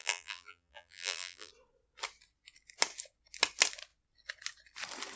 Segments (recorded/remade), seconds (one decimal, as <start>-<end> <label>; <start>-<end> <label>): 0.0-1.5 remade; 1.5-5.2 recorded